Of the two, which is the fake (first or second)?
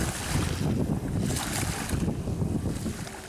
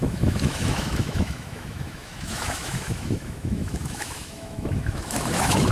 second